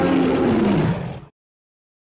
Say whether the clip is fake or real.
real